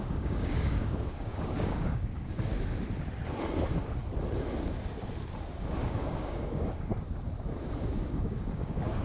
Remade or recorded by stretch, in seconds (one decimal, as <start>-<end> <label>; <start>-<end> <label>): 0.0-2.5 remade; 2.5-5.5 recorded; 5.5-6.9 remade; 6.9-7.8 recorded; 7.8-9.0 remade